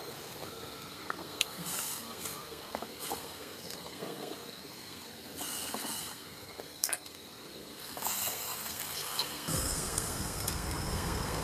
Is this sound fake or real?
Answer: fake